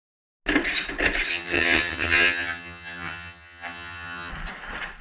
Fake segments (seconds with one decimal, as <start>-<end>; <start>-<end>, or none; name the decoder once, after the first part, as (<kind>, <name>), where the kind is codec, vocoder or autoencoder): 1.3-4.3 (vocoder, HiFi-GAN)